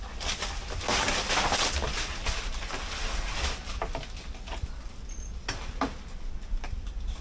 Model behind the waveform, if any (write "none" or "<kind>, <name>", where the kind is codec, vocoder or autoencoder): none